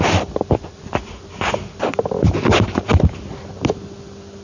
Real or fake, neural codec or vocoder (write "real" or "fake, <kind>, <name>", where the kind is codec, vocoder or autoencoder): real